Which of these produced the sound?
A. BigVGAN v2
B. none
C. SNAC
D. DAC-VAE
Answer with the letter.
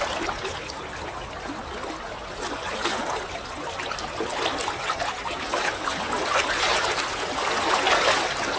B